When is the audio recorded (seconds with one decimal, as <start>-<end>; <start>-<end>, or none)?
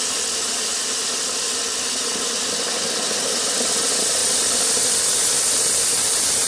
0.0-6.5